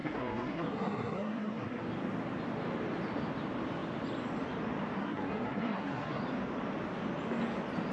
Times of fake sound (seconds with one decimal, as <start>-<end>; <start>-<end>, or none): 0.0-1.8; 5.0-6.2

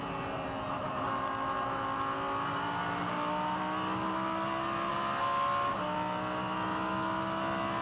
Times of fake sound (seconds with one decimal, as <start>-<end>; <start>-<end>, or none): none